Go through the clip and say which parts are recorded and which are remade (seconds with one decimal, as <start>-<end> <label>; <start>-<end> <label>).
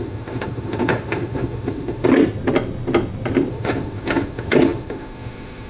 0.0-2.1 remade; 2.1-3.5 recorded; 3.5-5.7 remade